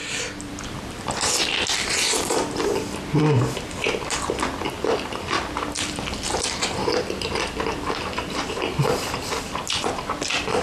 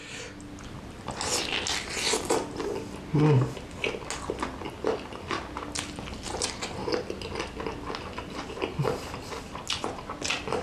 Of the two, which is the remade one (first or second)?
first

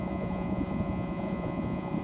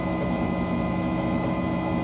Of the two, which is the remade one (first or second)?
first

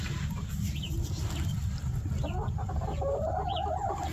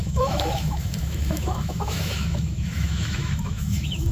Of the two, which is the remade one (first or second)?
second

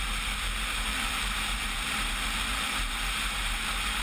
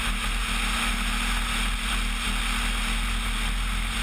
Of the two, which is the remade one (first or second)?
first